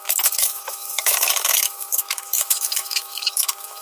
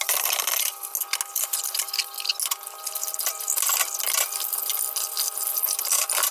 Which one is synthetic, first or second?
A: first